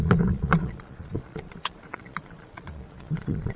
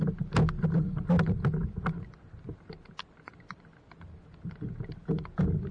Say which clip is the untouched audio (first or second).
second